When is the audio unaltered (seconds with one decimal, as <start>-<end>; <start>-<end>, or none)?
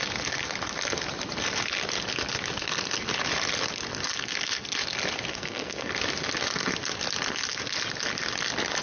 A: 0.0-5.3; 5.9-8.8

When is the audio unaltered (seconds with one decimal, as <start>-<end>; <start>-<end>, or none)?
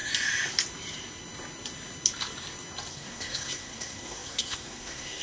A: 0.0-2.9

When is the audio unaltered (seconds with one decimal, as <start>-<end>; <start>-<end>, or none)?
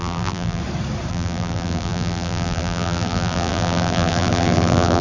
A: 0.6-1.1